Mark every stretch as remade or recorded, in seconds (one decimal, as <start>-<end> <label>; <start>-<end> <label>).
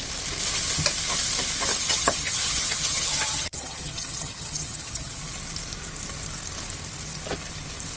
0.0-1.7 recorded; 1.7-5.2 remade; 5.2-8.0 recorded